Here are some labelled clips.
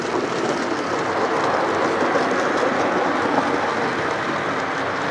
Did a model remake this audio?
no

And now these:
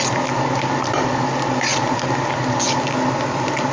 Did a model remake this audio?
no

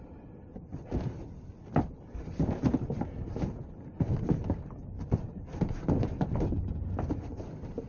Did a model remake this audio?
yes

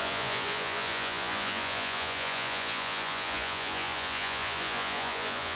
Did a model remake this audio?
yes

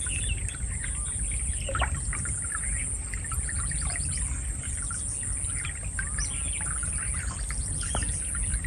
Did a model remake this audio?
no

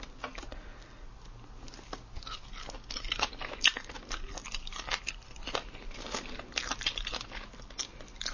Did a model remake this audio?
no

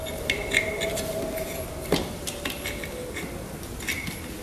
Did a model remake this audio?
no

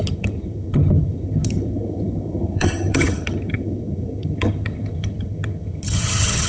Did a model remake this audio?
yes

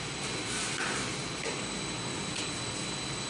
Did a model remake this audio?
no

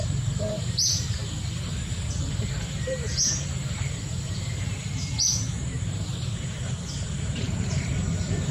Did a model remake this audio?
yes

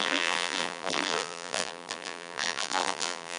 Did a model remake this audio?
yes